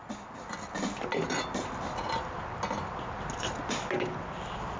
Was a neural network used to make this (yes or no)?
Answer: no